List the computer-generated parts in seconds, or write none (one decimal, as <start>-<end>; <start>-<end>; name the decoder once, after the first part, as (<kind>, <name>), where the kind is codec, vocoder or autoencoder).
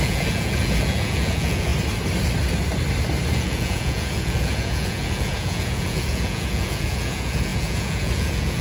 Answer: 0.0-1.7 (vocoder, Vocos); 3.3-8.6